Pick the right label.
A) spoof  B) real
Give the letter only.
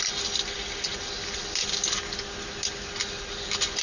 B